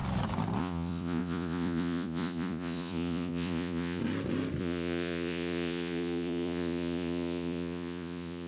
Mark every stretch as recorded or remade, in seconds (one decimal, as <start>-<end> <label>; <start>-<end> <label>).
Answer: 0.0-0.6 recorded; 0.6-4.0 remade; 4.0-4.6 recorded; 4.6-8.5 remade